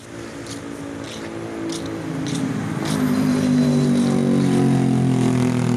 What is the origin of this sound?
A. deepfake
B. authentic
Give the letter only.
B